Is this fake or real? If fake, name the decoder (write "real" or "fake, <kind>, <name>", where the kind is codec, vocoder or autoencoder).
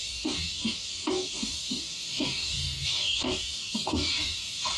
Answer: fake, codec, DAC